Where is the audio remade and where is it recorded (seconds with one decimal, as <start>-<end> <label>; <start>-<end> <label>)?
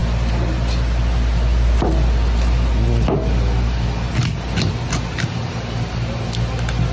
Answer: 0.0-6.9 recorded